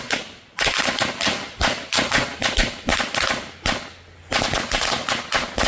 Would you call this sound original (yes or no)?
yes